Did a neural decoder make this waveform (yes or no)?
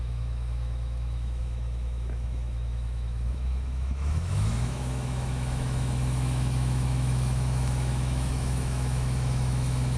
yes